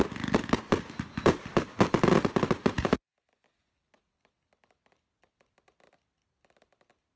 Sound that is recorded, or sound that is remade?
recorded